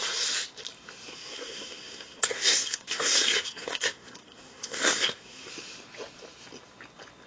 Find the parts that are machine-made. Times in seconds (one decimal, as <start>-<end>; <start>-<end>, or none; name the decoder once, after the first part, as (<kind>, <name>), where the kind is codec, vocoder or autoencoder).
1.1-5.5 (codec, SNAC)